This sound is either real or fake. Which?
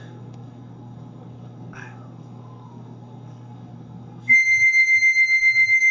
fake